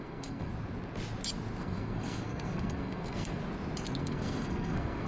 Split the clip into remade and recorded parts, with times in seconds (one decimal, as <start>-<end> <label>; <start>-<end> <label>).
0.0-0.5 remade; 0.5-1.6 recorded; 1.6-3.4 remade; 3.4-4.0 recorded; 4.0-5.1 remade